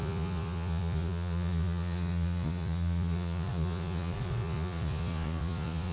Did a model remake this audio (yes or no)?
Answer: yes